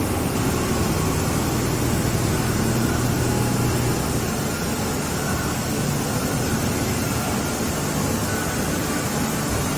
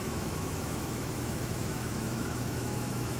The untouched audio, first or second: first